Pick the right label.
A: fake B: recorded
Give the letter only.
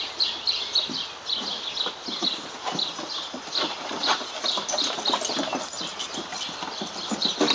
B